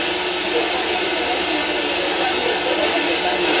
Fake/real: real